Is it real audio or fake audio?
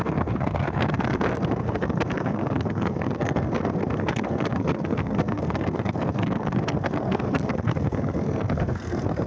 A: fake